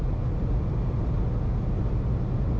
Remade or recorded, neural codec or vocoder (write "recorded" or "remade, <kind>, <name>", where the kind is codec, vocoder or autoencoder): recorded